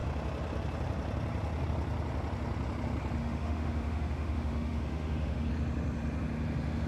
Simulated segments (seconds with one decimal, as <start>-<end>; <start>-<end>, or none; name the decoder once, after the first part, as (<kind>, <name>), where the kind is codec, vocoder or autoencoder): 3.2-5.5 (autoencoder, DAC-VAE)